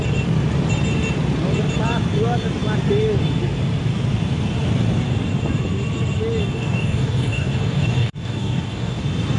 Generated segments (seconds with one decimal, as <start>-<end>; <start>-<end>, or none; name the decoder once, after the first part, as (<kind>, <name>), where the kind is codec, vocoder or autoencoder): 6.4-9.0 (codec, DAC)